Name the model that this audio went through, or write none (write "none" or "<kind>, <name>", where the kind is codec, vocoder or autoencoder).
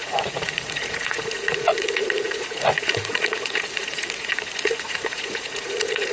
vocoder, Vocos